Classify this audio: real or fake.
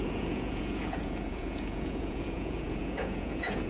fake